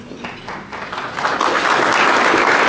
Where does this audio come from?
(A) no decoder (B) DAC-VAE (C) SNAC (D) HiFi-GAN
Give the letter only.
A